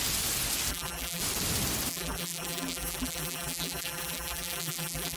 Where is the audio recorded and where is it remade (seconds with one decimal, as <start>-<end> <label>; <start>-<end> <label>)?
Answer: 0.0-0.7 recorded; 0.7-1.2 remade; 1.2-1.9 recorded; 1.9-5.2 remade